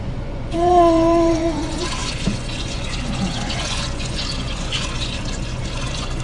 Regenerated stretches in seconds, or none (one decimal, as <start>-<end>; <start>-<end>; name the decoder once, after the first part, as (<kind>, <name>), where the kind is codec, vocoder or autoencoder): 0.0-6.2 (vocoder, Vocos)